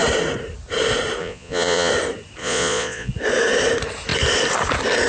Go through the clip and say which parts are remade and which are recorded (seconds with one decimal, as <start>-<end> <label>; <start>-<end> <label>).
0.0-1.2 recorded; 1.2-1.9 remade; 1.9-2.4 recorded; 2.4-3.1 remade; 3.1-5.1 recorded